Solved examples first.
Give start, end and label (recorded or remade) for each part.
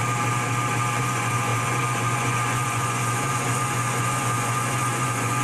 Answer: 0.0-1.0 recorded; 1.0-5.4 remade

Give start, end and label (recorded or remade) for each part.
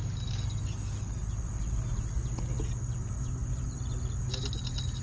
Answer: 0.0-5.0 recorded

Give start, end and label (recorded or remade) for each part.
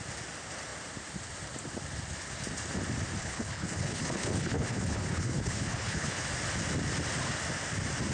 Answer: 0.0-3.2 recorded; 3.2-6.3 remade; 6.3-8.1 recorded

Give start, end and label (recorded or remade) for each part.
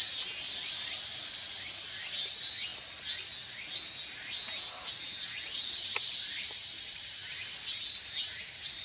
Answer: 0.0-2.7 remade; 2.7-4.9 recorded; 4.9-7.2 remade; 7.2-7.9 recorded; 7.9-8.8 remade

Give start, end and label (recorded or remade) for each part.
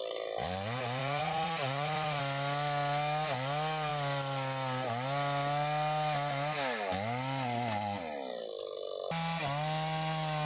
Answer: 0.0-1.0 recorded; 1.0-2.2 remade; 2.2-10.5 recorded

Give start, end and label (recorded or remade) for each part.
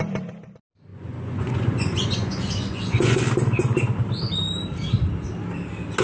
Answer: 0.0-0.9 recorded; 0.9-3.2 remade; 3.2-6.0 recorded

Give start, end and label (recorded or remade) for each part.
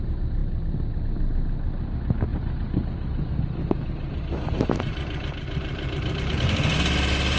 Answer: 0.0-7.4 recorded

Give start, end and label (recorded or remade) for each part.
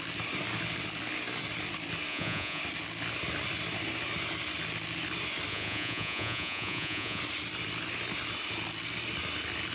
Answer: 0.0-2.1 recorded; 2.1-2.6 remade; 2.6-5.5 recorded; 5.5-7.2 remade; 7.2-9.7 recorded